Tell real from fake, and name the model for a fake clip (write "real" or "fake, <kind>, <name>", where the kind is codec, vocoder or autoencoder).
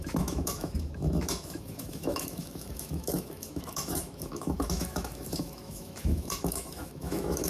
fake, autoencoder, DAC-VAE